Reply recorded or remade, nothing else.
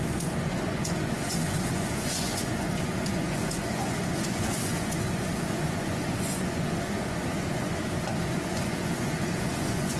remade